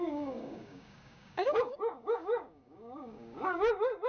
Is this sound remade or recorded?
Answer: remade